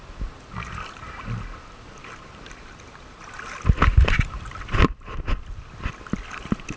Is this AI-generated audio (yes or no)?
no